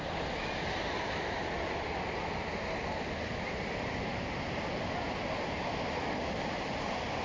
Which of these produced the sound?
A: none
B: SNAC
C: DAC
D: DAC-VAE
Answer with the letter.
A